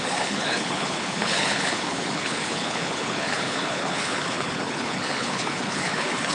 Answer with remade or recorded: remade